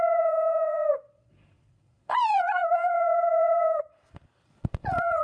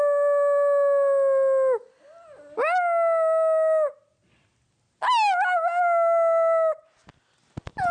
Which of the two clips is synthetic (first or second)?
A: first